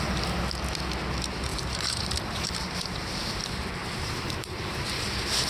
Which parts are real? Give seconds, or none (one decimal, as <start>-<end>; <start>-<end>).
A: 0.0-1.5; 2.5-3.8; 4.9-5.5